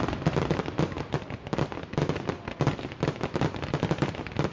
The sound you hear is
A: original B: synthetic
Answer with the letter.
A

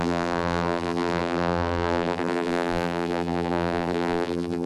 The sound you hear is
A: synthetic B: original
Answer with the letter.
A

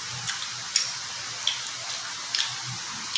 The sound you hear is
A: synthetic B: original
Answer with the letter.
B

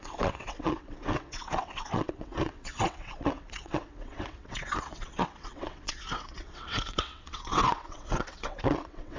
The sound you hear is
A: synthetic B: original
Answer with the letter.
A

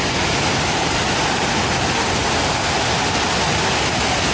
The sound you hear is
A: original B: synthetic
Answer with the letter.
A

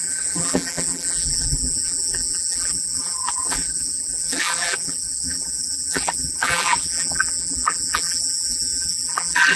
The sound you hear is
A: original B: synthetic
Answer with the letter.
B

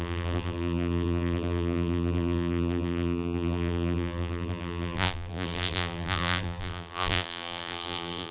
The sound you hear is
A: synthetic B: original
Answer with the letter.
A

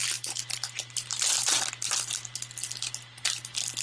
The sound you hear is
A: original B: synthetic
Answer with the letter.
A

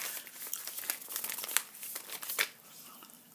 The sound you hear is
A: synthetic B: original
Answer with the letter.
B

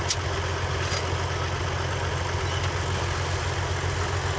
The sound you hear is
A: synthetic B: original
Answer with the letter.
B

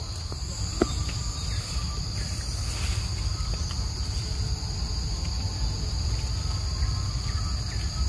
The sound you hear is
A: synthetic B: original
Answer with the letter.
B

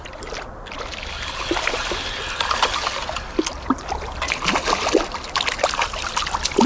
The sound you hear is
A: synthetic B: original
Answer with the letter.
B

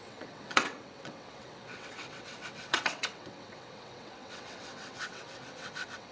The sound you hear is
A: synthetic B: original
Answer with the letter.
A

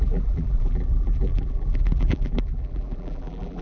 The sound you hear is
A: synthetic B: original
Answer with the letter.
A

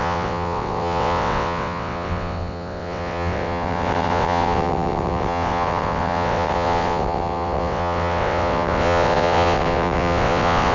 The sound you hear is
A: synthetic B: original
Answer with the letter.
A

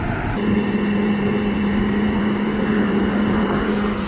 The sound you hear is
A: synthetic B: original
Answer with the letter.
A